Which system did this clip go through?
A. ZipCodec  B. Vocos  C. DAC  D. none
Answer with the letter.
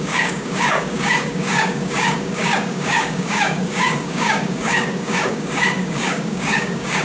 C